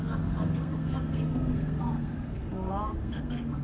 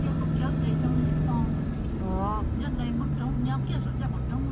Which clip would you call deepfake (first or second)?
first